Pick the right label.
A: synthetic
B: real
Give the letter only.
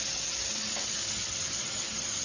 B